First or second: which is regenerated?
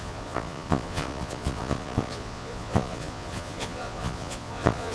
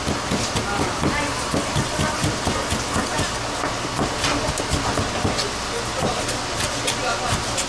first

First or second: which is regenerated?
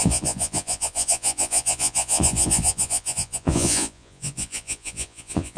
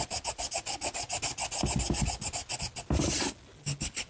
first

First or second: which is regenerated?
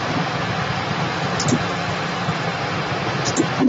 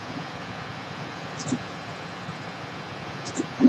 second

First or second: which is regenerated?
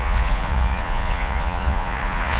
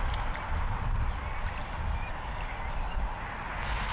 first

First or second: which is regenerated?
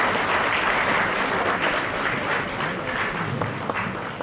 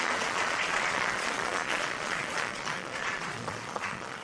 second